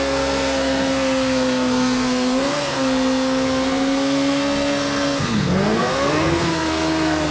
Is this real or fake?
fake